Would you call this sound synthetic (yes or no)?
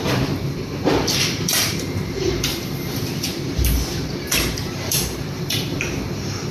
yes